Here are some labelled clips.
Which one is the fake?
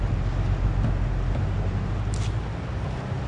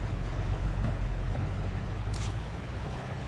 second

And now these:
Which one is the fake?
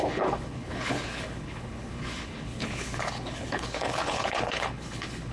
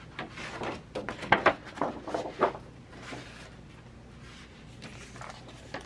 first